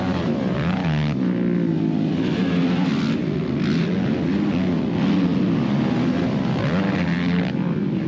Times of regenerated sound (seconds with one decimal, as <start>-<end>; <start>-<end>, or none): none